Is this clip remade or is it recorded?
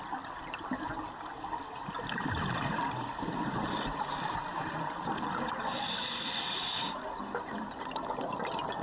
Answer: remade